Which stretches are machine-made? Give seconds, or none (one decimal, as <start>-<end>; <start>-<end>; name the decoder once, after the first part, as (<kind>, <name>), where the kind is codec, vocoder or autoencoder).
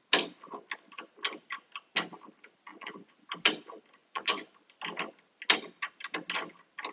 2.7-3.3 (vocoder, Vocos); 4.0-4.5